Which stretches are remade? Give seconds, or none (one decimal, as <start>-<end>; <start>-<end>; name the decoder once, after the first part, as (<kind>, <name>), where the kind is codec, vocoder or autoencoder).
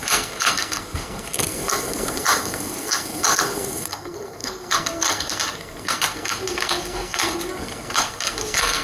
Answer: 0.0-8.8 (codec, SNAC)